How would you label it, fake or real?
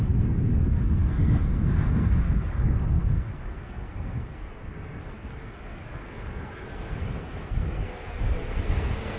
fake